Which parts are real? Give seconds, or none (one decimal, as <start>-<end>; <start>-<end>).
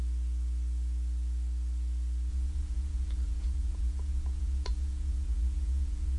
0.0-2.3